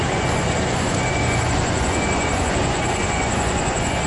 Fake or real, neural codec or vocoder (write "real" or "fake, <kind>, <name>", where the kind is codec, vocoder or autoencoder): fake, vocoder, Vocos